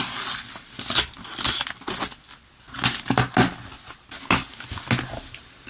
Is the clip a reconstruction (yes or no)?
no